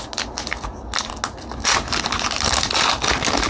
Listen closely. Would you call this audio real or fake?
real